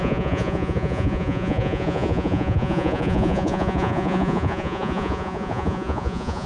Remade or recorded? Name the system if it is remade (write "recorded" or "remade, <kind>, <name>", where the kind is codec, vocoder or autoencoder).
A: remade, vocoder, Vocos